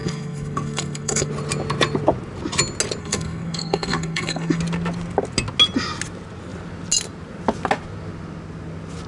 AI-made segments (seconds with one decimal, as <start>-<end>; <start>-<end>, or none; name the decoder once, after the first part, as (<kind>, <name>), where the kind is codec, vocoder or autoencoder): 0.0-1.3 (codec, SNAC); 3.0-4.6